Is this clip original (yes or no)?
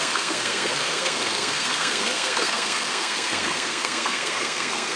no